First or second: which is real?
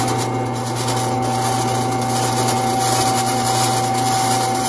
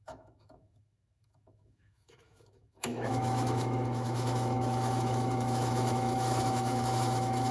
first